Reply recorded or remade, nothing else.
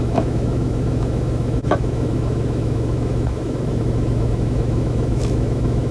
remade